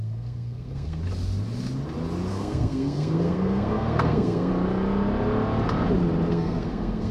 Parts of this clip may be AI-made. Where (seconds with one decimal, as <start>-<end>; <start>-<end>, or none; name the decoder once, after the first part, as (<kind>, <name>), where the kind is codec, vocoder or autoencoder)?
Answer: 0.0-1.0 (codec, SNAC); 2.3-4.5; 6.3-7.1